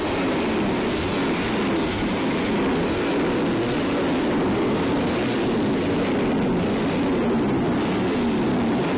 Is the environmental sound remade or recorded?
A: recorded